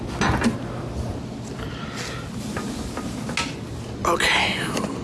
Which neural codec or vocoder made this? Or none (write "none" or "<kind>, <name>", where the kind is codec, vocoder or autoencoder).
none